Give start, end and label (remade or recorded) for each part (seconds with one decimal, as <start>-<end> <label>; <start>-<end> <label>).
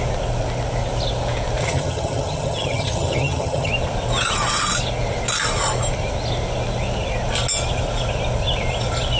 0.0-1.6 recorded; 1.6-3.7 remade; 3.7-9.2 recorded